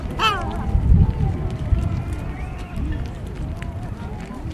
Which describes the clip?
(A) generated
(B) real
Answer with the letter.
A